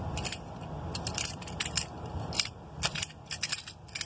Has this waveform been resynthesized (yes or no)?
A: no